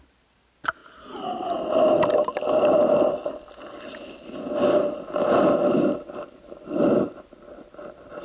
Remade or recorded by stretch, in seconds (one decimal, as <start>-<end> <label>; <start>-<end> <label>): 0.0-8.2 recorded